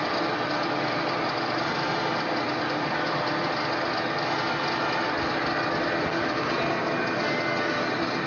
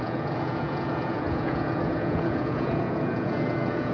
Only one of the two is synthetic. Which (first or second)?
second